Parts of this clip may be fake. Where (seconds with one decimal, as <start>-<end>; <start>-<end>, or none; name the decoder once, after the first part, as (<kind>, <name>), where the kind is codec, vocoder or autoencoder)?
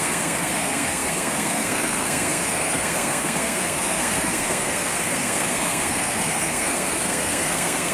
0.0-7.9 (codec, SNAC)